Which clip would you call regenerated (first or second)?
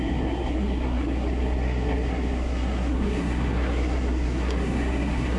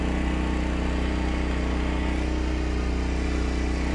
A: first